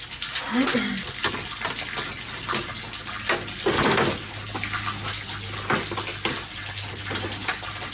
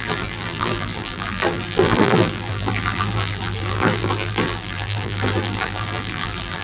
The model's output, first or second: second